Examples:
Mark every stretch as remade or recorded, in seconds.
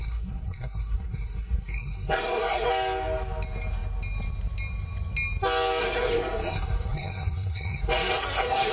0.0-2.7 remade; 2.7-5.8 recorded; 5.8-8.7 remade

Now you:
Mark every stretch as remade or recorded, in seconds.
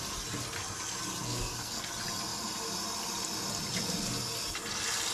0.0-1.2 recorded; 1.2-1.9 remade; 1.9-5.1 recorded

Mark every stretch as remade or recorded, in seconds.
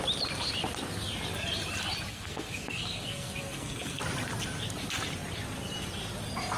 0.0-2.1 recorded; 2.1-4.0 remade; 4.0-6.6 recorded